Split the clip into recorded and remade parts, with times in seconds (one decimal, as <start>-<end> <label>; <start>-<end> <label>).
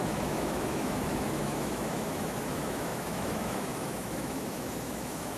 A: 0.0-5.4 remade